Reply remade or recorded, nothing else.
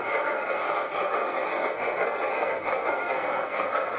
remade